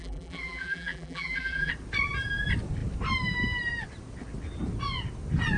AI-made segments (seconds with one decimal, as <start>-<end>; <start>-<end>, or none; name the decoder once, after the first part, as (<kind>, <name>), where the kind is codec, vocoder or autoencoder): 0.0-1.7 (vocoder, BigVGAN v2)